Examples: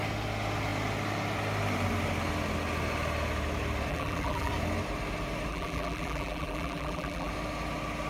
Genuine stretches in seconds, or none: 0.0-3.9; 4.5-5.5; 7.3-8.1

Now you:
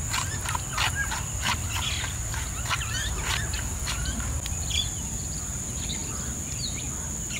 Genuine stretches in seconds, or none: 0.0-1.0; 5.4-6.0; 6.7-7.4

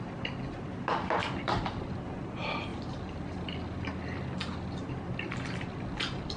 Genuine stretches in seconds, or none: 0.0-1.2; 2.1-2.7; 5.4-6.4

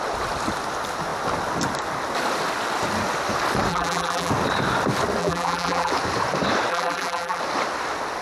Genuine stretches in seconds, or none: 0.0-3.7; 4.3-5.2; 5.9-6.7; 7.4-8.2

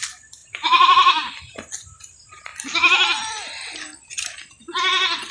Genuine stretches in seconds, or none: 0.0-0.4; 1.4-5.3

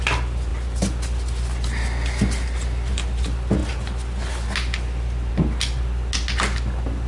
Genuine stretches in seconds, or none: 0.0-7.1

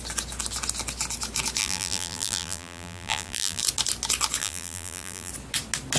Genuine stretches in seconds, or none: 0.0-1.6; 3.6-4.4; 5.3-6.0

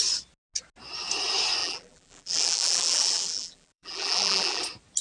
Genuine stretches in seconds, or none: 0.0-1.6; 4.6-5.0